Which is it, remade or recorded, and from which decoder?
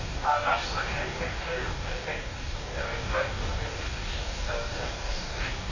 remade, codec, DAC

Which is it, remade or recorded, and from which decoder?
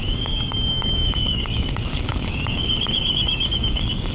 remade, codec, DAC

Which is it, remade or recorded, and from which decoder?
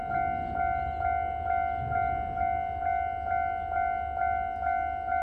recorded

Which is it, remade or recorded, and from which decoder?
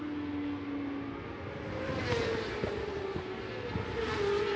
recorded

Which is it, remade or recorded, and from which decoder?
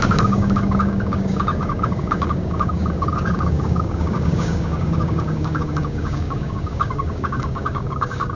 remade, codec, DAC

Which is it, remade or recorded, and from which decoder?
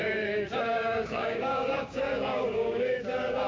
remade, codec, DAC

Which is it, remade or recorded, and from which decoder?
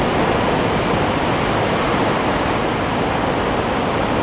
recorded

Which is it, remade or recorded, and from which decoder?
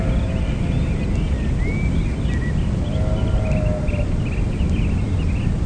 recorded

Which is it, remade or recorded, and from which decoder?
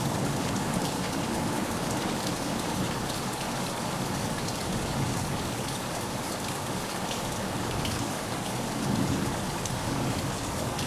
remade, codec, DAC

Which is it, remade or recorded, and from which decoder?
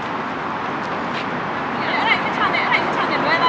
recorded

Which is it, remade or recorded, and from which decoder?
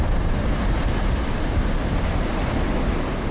recorded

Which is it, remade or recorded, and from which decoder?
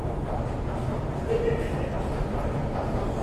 recorded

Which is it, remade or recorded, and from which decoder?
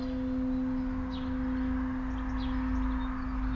recorded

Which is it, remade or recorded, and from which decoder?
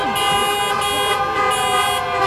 recorded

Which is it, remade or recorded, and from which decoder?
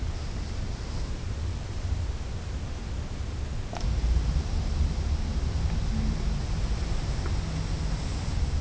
recorded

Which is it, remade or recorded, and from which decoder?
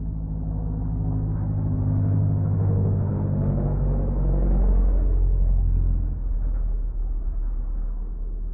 recorded